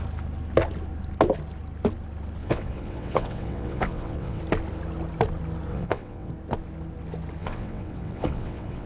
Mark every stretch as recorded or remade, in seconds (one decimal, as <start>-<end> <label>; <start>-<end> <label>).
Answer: 0.0-2.4 recorded; 2.4-4.4 remade; 4.4-5.7 recorded; 5.7-6.3 remade; 6.3-7.4 recorded; 7.4-8.9 remade